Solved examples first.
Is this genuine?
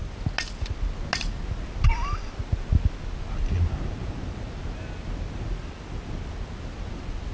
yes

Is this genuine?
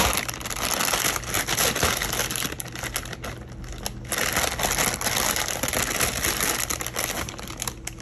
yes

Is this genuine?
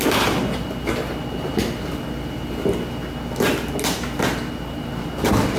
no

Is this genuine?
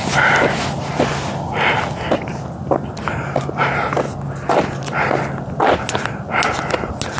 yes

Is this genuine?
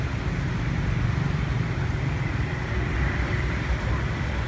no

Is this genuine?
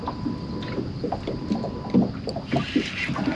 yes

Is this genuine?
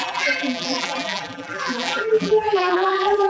no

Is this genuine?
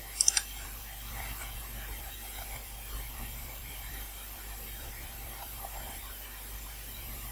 no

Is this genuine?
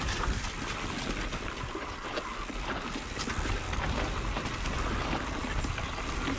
yes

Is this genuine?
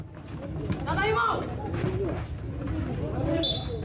yes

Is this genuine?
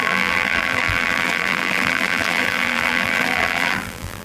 no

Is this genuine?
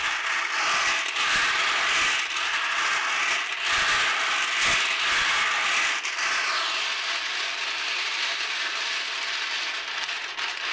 yes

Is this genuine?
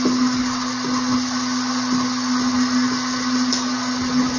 yes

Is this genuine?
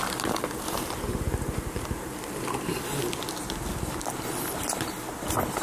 yes